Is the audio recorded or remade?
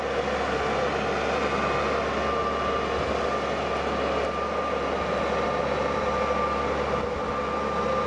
recorded